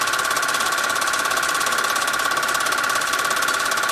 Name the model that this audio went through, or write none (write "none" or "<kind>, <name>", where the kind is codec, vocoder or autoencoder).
none